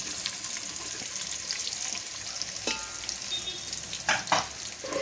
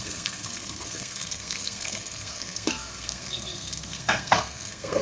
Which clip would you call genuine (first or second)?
first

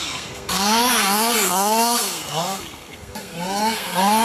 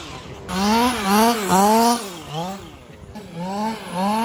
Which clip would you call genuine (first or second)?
second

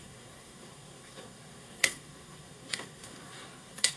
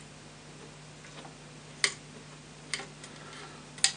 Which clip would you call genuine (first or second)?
second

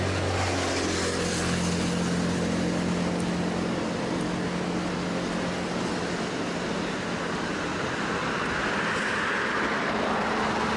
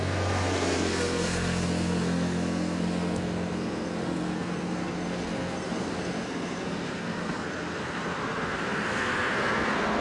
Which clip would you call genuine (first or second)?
first